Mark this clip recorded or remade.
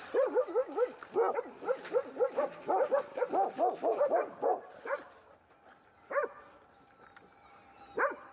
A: recorded